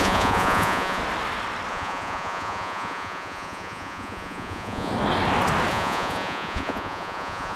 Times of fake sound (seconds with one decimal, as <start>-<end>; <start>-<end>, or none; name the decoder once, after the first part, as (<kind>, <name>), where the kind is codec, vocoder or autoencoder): 0.0-1.0 (vocoder, Vocos); 1.7-4.9; 5.7-7.6